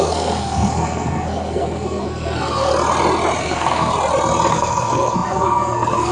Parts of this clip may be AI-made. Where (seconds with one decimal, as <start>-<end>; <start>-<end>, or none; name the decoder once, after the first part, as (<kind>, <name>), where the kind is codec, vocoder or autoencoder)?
0.0-2.7 (codec, SNAC); 3.4-3.9; 4.5-6.1